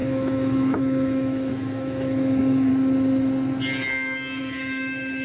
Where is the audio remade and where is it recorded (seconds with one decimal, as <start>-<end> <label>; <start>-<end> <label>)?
0.0-2.7 remade; 2.7-4.4 recorded; 4.4-5.2 remade